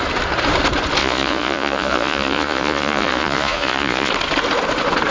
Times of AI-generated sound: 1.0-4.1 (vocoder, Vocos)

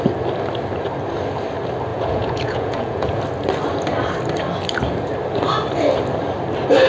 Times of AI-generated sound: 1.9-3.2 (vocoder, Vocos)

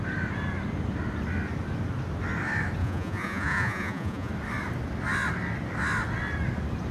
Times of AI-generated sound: 2.8-4.3 (vocoder, Vocos)